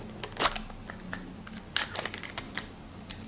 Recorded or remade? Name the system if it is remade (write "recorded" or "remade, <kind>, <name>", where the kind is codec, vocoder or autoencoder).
recorded